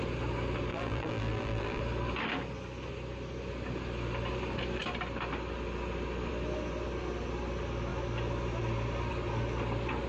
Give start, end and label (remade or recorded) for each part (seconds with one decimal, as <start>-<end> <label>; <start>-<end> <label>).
0.0-0.7 recorded; 0.7-1.8 remade; 1.8-10.1 recorded